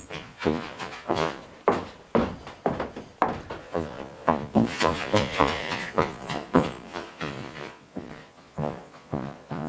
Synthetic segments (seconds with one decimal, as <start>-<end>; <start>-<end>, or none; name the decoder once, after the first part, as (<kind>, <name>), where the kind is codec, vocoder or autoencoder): 0.0-1.4 (vocoder, Vocos); 3.6-9.7